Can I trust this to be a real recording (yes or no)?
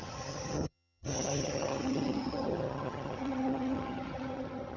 no